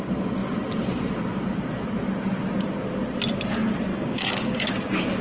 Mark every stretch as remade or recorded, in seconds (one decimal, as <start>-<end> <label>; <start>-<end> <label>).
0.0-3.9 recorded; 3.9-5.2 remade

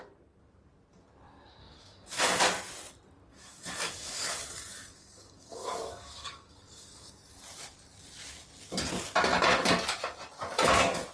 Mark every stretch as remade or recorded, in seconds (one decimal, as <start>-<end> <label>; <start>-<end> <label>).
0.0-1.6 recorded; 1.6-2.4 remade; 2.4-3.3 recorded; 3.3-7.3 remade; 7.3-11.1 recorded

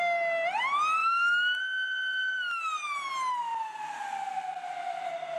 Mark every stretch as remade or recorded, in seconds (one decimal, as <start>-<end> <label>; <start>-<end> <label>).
0.0-1.0 recorded; 1.0-1.6 remade; 1.6-5.4 recorded

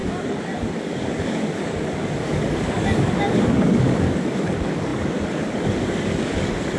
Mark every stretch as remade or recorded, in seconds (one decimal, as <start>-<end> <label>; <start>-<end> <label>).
0.0-6.8 remade

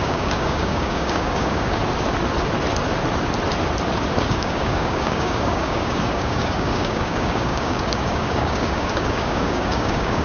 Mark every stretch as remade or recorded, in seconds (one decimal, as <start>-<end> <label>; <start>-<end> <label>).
0.0-1.8 remade; 1.8-4.2 recorded; 4.2-10.2 remade